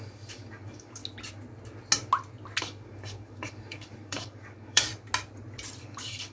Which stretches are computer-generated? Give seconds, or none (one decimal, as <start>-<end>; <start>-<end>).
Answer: 0.0-1.0; 2.6-4.9; 5.8-6.3